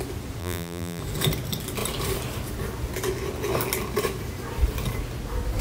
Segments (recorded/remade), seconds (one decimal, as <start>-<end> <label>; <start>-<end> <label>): 0.0-0.4 recorded; 0.4-1.0 remade; 1.0-5.6 recorded